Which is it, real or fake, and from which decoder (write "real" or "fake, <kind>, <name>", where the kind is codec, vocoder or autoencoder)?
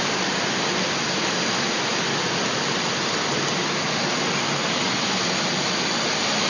real